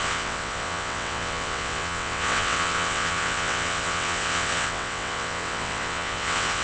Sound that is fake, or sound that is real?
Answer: fake